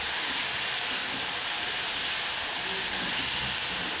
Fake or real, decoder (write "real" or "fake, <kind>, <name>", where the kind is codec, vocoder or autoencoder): real